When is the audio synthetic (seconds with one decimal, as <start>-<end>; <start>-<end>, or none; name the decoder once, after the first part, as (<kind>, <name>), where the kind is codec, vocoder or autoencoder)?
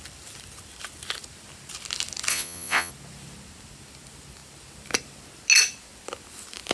2.3-2.9 (vocoder, Vocos)